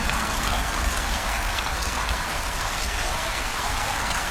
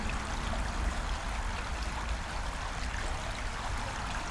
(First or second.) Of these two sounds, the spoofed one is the first